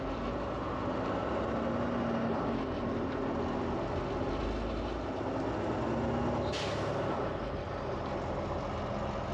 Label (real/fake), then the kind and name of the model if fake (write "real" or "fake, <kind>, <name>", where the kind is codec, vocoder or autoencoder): real